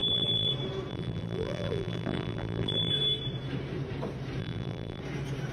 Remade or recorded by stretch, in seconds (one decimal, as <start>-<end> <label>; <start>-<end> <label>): 0.0-0.5 remade; 0.5-0.9 recorded; 0.9-2.9 remade; 2.9-4.4 recorded; 4.4-5.0 remade; 5.0-5.5 recorded

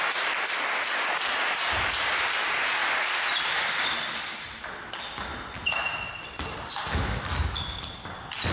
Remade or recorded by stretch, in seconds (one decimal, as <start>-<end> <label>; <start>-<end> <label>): 0.0-2.8 recorded; 2.8-4.6 remade; 4.6-8.5 recorded

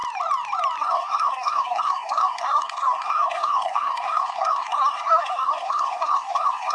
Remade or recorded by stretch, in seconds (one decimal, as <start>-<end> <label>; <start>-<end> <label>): 0.0-0.8 recorded; 0.8-6.7 remade

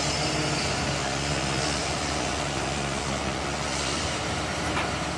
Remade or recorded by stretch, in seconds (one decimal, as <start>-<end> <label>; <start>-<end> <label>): 0.0-1.0 recorded; 1.0-4.1 remade; 4.1-5.2 recorded

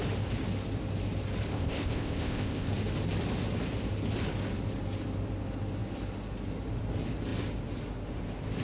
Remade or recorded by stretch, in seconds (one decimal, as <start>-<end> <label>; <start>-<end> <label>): 0.0-1.5 recorded; 1.5-2.7 remade; 2.7-8.6 recorded

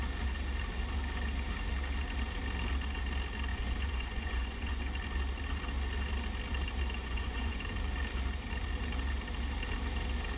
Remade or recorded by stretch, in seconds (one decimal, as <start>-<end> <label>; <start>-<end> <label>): 0.0-3.5 recorded; 3.5-4.8 remade; 4.8-7.0 recorded; 7.0-7.6 remade; 7.6-10.4 recorded